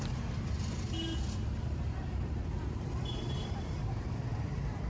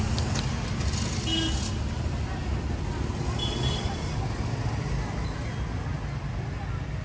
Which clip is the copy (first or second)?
first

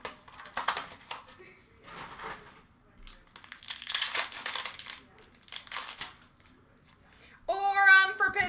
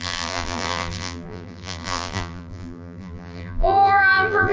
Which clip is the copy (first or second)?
second